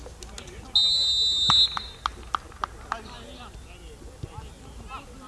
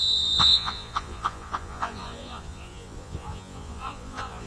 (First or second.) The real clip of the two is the first